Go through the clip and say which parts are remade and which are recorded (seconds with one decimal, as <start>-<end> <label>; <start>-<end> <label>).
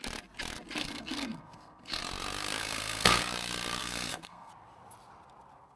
0.0-0.8 recorded; 0.8-2.0 remade; 2.0-2.6 recorded; 2.6-3.2 remade; 3.2-3.8 recorded; 3.8-4.5 remade; 4.5-5.8 recorded